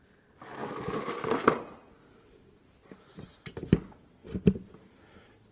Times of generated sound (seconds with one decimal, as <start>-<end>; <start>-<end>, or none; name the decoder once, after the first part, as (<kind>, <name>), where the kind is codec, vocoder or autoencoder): none